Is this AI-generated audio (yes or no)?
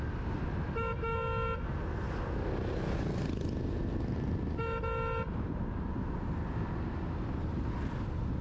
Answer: no